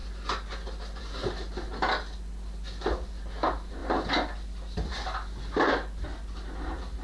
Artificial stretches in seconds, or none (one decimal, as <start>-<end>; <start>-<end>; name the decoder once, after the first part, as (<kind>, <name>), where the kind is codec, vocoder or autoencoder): none